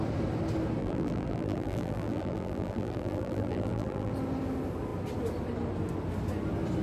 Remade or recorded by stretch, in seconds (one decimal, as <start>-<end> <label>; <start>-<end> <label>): 0.0-0.8 recorded; 0.8-4.1 remade; 4.1-6.8 recorded